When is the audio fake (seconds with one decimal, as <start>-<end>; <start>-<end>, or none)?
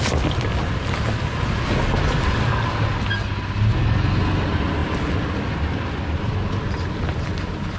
none